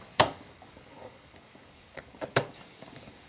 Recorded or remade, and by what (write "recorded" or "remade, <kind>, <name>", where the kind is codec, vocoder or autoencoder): remade, codec, DAC